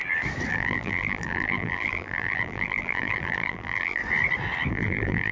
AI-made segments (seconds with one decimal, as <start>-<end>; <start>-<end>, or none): 0.5-4.0; 4.7-5.3